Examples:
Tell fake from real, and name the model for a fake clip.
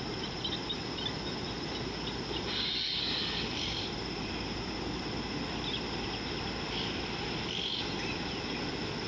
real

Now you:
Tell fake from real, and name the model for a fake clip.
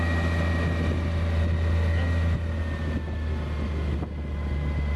real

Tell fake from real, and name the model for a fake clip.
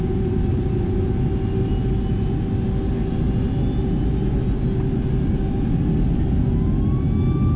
real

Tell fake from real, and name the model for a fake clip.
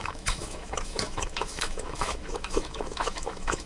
fake, autoencoder, DAC-VAE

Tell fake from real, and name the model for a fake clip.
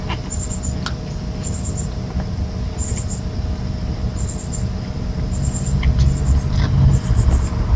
real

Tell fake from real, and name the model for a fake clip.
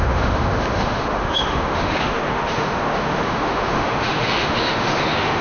fake, autoencoder, DAC-VAE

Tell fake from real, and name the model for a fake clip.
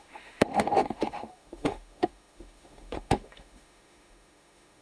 fake, autoencoder, DAC-VAE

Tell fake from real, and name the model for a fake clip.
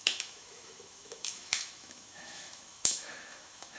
fake, autoencoder, DAC-VAE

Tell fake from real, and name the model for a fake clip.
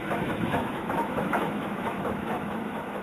fake, autoencoder, DAC-VAE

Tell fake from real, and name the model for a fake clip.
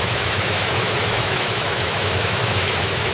fake, autoencoder, DAC-VAE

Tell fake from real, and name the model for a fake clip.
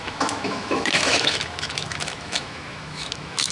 fake, autoencoder, DAC-VAE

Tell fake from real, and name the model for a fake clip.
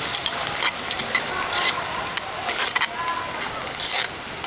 real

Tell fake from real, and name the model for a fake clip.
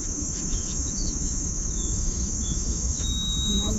fake, autoencoder, DAC-VAE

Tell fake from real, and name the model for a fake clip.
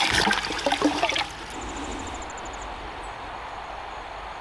real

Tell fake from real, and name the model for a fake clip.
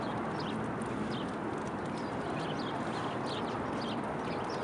real